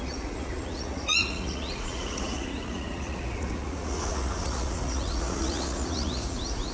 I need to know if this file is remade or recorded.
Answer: remade